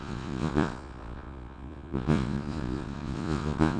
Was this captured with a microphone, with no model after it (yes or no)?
no